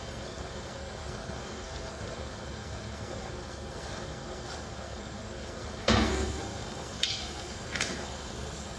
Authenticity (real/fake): fake